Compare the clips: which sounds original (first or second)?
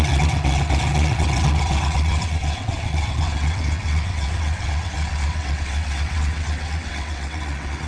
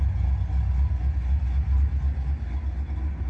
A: second